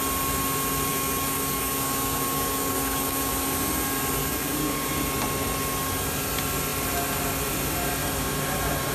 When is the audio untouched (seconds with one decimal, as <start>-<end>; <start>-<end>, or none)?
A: 0.0-0.9; 3.3-4.2; 4.9-8.9